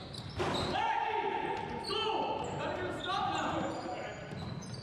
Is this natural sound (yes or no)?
yes